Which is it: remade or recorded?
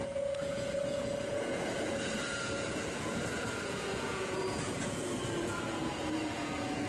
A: remade